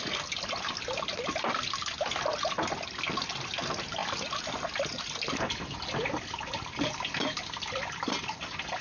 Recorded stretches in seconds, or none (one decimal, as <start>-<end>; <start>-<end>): 0.0-8.8